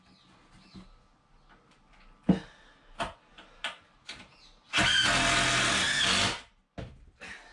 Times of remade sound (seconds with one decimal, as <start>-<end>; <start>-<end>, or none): none